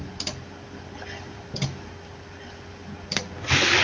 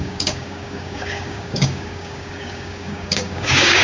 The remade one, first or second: second